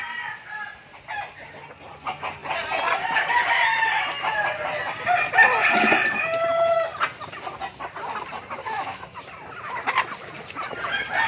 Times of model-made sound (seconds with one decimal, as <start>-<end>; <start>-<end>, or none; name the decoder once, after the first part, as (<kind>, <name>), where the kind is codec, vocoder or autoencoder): 8.6-9.2 (autoencoder, DAC-VAE)